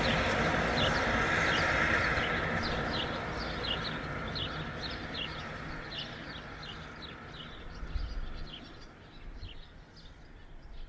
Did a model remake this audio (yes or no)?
no